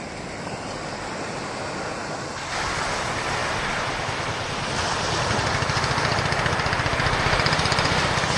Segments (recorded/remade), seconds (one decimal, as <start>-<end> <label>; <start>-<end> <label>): 0.0-3.4 remade; 3.4-4.0 recorded; 4.0-6.9 remade; 6.9-7.6 recorded; 7.6-8.4 remade